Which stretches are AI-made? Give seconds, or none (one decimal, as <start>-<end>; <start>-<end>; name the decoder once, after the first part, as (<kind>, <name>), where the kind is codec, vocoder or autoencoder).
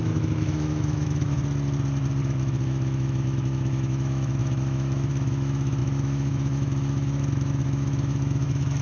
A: 0.0-1.4 (autoencoder, DAC-VAE); 2.2-8.8